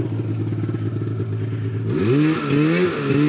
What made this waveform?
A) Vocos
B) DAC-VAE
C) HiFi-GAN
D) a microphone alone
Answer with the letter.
D